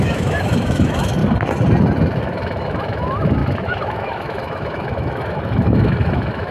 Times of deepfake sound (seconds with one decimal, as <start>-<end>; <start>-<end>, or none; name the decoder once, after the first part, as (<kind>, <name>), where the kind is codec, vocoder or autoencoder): 0.0-1.2 (autoencoder, DAC-VAE); 2.2-6.5